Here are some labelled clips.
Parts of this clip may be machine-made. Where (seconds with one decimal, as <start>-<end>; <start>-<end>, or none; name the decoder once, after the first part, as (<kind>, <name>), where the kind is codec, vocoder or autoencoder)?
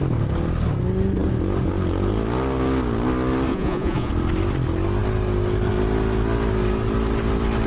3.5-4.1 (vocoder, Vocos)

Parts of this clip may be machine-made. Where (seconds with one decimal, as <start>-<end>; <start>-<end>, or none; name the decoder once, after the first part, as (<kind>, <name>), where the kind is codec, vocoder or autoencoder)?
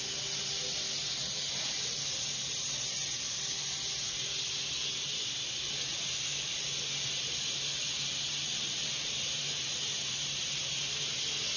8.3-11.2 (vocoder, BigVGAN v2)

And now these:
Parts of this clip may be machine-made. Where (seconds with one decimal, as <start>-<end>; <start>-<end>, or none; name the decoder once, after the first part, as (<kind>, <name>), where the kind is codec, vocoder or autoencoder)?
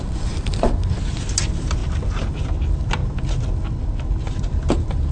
none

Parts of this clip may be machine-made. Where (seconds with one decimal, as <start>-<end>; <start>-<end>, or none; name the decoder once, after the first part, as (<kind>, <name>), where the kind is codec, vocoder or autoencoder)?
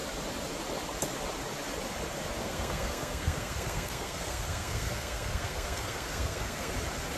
2.4-6.7 (codec, SNAC)